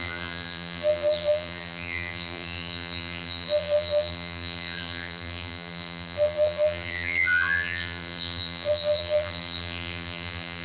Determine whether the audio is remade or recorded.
remade